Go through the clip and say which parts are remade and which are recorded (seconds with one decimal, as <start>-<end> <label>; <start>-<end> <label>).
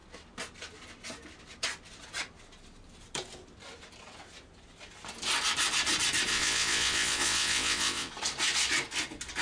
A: 0.0-6.3 recorded; 6.3-8.1 remade; 8.1-9.4 recorded